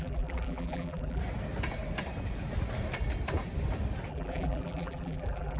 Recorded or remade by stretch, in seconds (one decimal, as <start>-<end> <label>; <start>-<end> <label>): 0.0-1.2 remade; 1.2-4.1 recorded; 4.1-5.6 remade